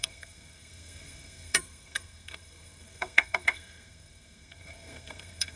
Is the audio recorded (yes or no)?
no